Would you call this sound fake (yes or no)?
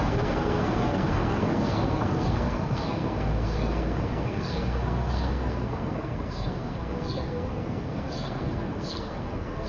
yes